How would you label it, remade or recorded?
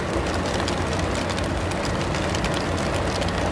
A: recorded